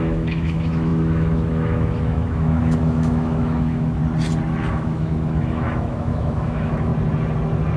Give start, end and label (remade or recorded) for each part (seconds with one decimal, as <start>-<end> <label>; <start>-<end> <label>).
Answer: 0.0-4.0 remade; 4.0-4.7 recorded; 4.7-6.9 remade; 6.9-7.8 recorded